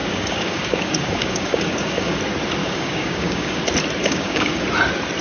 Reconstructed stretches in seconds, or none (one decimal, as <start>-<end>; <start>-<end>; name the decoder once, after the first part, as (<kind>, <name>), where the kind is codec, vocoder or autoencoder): 0.0-2.2 (codec, DAC); 2.6-3.6; 4.0-4.6